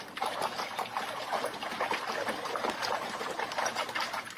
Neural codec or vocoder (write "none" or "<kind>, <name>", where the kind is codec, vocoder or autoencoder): vocoder, BigVGAN v2